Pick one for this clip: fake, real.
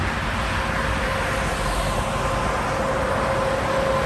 real